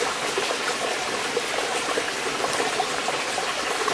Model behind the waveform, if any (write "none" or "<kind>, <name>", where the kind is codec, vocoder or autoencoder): none